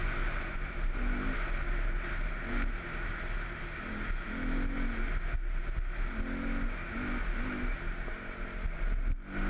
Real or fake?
real